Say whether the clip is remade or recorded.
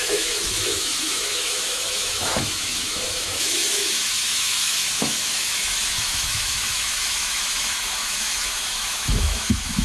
remade